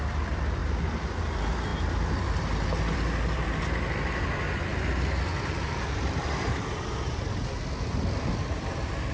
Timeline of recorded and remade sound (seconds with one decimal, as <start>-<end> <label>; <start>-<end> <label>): 0.0-0.6 remade; 0.6-1.1 recorded; 1.1-9.1 remade

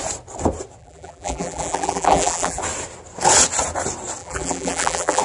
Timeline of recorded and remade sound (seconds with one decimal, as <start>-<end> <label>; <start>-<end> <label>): 0.0-0.8 recorded; 0.8-2.6 remade; 2.6-4.2 recorded; 4.2-5.2 remade

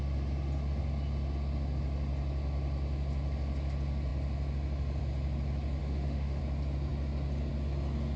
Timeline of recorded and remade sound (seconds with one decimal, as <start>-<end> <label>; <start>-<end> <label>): 0.0-5.8 recorded; 5.8-6.4 remade; 6.4-8.2 recorded

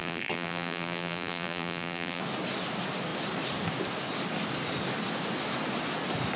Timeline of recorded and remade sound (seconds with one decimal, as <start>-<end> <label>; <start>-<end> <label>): 0.0-2.2 remade; 2.2-6.4 recorded

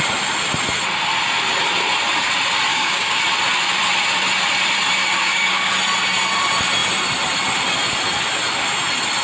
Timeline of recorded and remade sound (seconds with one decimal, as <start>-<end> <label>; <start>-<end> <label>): 0.0-2.7 recorded; 2.7-3.2 remade; 3.2-5.2 recorded; 5.2-5.7 remade; 5.7-9.2 recorded